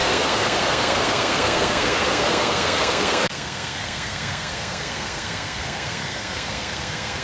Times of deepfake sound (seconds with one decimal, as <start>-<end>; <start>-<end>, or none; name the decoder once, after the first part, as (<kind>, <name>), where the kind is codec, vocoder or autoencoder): 0.0-7.2 (codec, SNAC)